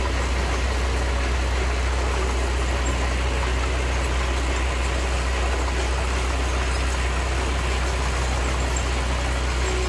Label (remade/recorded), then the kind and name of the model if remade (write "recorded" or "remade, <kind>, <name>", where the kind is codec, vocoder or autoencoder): recorded